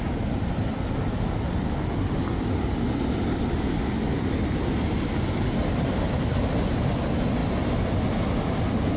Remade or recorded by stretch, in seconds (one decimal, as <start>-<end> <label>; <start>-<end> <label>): 0.0-9.0 recorded